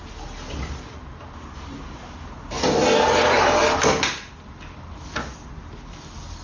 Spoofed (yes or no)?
no